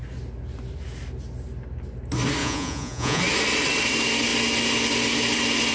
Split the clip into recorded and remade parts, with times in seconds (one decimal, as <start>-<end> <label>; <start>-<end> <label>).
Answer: 0.0-2.4 recorded; 2.4-3.2 remade; 3.2-5.7 recorded